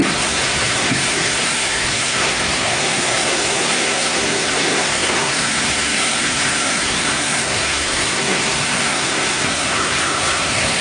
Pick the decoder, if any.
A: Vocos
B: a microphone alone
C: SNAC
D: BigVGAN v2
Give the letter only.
C